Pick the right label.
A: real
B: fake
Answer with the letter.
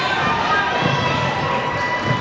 A